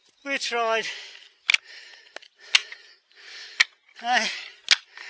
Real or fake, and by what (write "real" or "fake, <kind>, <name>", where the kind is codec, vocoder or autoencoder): real